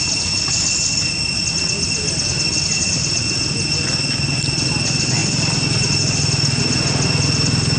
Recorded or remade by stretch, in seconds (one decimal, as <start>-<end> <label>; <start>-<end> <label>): 0.0-7.8 recorded